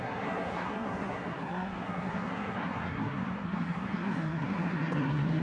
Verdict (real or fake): fake